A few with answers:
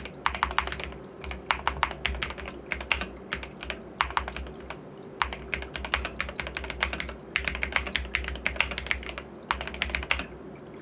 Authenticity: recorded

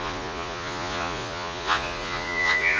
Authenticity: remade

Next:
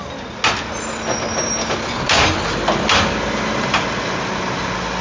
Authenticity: recorded